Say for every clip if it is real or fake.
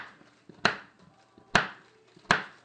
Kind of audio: real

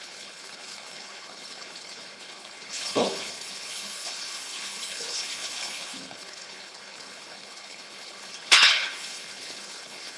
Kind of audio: fake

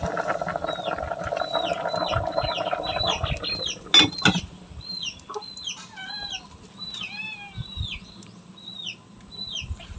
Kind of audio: real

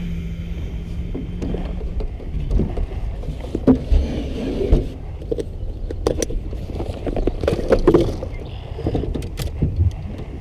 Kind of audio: real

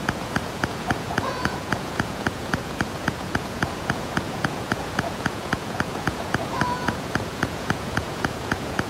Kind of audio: fake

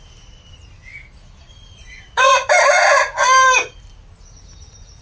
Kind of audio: real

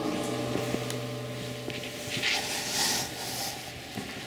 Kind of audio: real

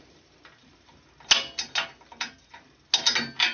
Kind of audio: real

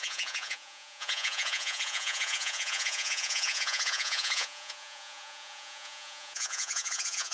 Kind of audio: fake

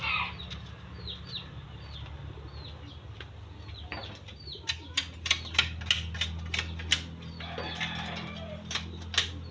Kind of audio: real